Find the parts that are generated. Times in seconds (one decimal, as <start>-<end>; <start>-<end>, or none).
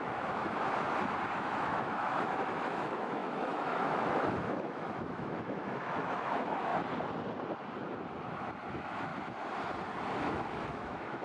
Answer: 0.0-0.4; 1.3-6.7; 8.7-9.1; 10.1-11.2